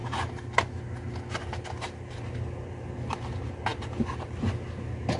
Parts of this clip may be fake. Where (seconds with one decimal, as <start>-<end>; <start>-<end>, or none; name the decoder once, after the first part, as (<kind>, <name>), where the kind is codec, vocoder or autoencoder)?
none